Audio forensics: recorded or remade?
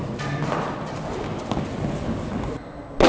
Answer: recorded